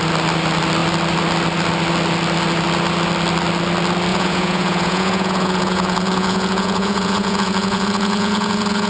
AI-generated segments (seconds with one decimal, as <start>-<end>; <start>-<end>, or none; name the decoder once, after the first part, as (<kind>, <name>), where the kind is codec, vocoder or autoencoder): 4.1-8.9 (vocoder, Vocos)